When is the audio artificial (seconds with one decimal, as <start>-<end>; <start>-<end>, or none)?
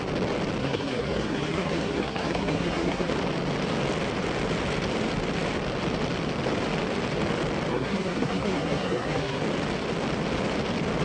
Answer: 0.6-3.1; 7.7-9.4